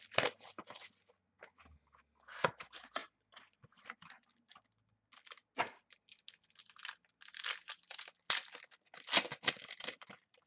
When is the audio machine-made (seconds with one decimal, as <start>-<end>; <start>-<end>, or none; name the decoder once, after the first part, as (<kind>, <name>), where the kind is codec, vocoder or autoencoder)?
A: none